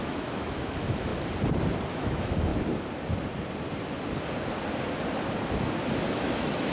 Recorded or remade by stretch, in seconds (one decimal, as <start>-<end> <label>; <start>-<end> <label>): 0.0-1.1 remade; 1.1-1.9 recorded; 1.9-2.5 remade; 2.5-6.2 recorded; 6.2-6.7 remade